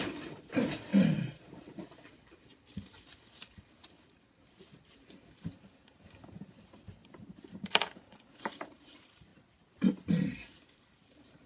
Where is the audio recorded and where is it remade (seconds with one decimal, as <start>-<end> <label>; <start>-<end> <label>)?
0.0-7.0 remade; 7.0-8.4 recorded; 8.4-9.3 remade; 9.3-10.3 recorded; 10.3-11.5 remade